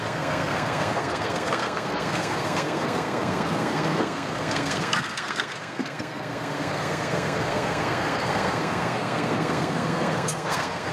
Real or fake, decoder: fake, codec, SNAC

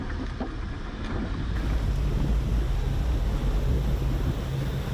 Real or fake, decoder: real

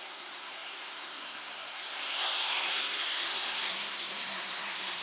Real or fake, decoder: fake, codec, SNAC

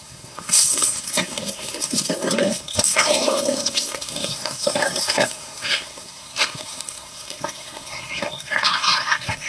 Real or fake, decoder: fake, codec, SNAC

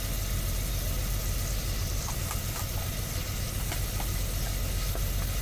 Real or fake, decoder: real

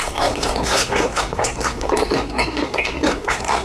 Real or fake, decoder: fake, codec, SNAC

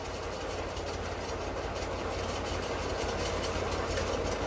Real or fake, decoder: real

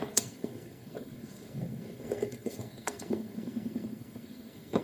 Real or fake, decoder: fake, codec, SNAC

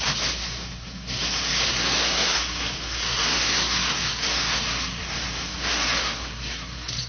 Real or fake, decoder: fake, codec, SNAC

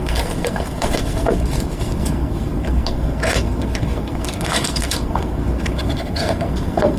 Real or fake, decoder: fake, codec, SNAC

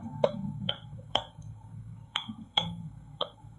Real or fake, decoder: fake, codec, SNAC